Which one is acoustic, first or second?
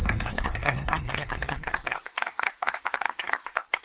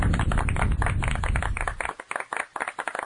second